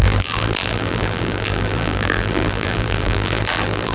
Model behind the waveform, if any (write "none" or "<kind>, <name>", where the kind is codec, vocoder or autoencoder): vocoder, BigVGAN v2